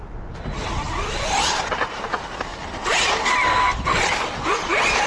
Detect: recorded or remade recorded